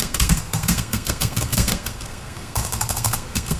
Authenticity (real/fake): fake